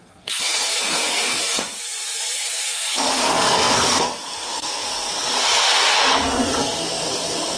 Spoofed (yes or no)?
yes